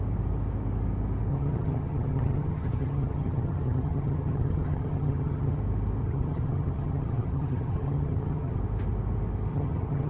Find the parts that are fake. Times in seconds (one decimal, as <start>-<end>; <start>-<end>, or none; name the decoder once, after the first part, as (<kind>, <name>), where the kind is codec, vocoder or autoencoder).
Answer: 1.3-5.6 (vocoder, HiFi-GAN); 6.0-8.6; 9.5-10.1